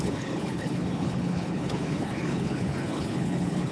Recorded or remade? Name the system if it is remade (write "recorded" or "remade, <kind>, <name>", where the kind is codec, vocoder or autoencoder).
remade, codec, HILCodec